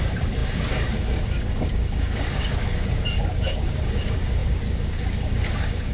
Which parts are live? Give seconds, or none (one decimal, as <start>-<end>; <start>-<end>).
none